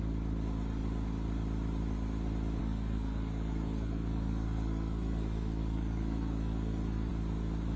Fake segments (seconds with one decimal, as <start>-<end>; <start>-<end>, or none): 2.6-7.1